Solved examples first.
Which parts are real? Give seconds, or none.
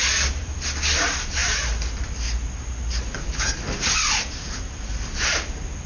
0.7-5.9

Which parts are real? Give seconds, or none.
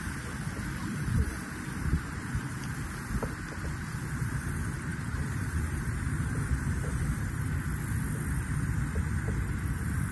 0.0-0.9; 2.6-4.9; 7.0-10.1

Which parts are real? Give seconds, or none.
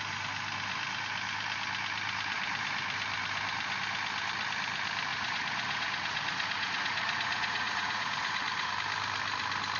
0.0-5.1; 8.7-9.8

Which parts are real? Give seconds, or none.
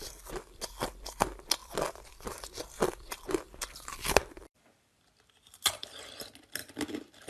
0.0-1.6; 6.0-6.6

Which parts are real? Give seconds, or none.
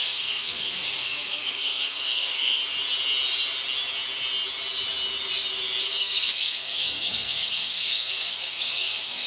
2.6-5.8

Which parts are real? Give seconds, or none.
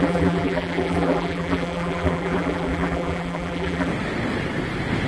3.9-5.1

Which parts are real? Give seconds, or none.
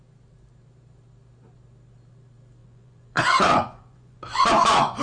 0.0-2.6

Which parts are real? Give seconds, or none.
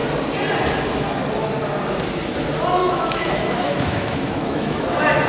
0.0-2.8; 4.8-5.3